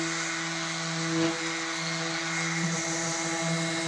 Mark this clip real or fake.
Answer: real